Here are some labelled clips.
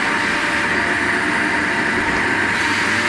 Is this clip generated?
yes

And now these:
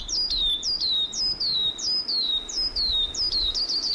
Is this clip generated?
no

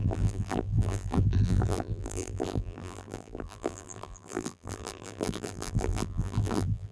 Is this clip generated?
yes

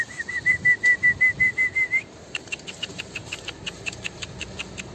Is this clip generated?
yes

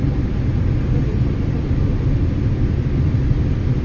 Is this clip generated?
no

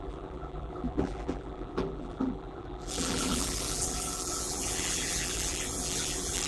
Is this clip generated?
yes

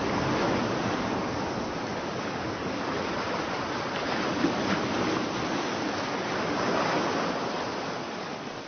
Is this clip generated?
no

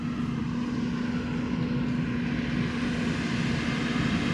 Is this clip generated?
no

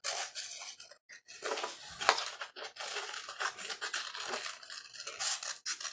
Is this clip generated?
no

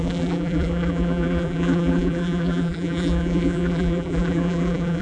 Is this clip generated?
yes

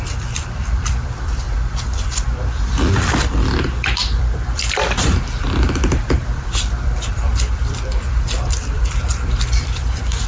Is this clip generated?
yes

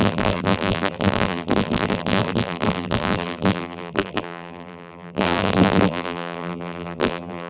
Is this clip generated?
yes